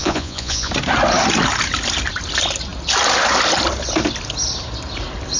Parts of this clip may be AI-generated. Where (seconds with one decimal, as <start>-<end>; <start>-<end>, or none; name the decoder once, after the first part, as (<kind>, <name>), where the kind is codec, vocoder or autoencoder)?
0.0-0.7 (vocoder, Vocos)